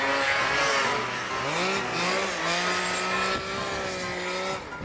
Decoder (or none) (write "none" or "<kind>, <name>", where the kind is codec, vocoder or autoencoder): none